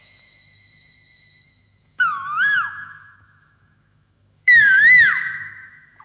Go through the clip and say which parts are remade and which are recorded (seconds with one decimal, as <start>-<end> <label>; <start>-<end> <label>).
0.0-6.0 remade

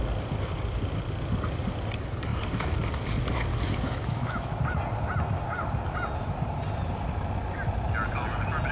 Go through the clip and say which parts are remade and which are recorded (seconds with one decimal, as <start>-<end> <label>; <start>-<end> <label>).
0.0-3.5 recorded; 3.5-4.6 remade; 4.6-8.7 recorded